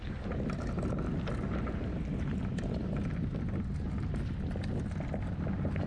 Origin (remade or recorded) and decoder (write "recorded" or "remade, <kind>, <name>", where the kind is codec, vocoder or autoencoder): recorded